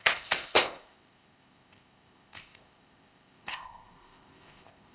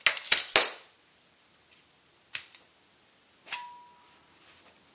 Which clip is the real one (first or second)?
second